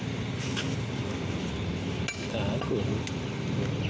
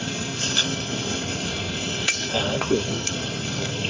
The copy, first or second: second